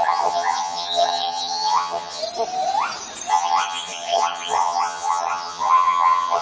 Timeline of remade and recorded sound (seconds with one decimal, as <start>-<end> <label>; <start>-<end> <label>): 0.0-2.2 remade; 2.2-3.3 recorded; 3.3-6.4 remade